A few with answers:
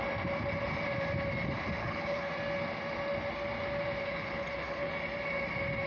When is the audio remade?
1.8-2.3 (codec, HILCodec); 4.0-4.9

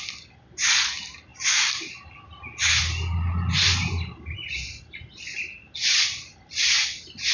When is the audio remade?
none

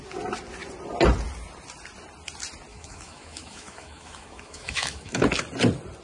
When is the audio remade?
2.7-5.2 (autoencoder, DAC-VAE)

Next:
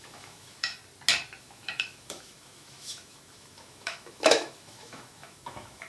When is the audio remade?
0.0-0.8 (autoencoder, DAC-VAE); 1.4-5.9

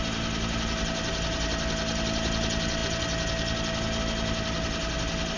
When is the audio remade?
none

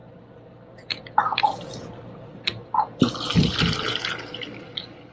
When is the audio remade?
none